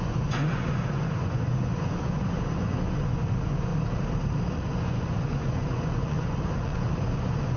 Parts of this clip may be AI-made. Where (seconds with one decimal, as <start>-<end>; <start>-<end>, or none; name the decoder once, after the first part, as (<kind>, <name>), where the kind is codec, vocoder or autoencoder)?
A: 0.0-3.7 (vocoder, Vocos); 4.5-7.6

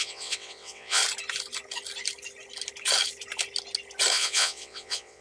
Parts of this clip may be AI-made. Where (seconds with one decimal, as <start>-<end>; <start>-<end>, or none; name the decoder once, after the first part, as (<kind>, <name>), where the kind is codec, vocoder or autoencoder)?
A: 0.0-1.0 (vocoder, WaveNeXt); 4.1-5.2

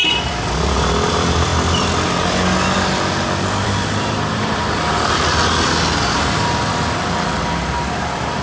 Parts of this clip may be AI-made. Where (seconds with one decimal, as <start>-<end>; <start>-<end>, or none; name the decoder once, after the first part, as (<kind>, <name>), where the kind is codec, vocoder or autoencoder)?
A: 1.1-1.5 (vocoder, BigVGAN v2); 3.5-8.4

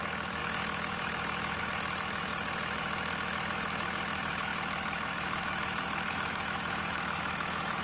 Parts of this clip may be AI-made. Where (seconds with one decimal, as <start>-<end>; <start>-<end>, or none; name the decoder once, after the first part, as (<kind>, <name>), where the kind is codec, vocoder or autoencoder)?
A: 0.0-7.8 (autoencoder, DAC-VAE)

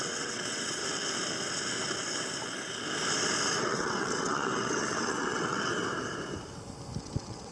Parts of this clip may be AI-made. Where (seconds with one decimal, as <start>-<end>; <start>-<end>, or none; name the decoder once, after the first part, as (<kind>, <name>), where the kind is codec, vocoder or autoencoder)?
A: 0.0-0.8 (vocoder, WaveNeXt); 3.6-5.7; 7.0-7.5

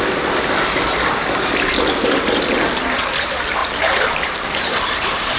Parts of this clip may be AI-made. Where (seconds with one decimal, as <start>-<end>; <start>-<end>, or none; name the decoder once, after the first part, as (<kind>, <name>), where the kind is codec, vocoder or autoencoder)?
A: 3.6-5.4 (vocoder, BigVGAN v2)

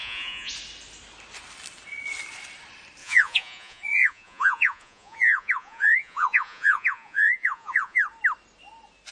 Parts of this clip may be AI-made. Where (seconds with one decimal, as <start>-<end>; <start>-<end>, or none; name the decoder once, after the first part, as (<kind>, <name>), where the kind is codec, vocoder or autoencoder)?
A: 0.0-0.5 (vocoder, Vocos); 3.0-8.0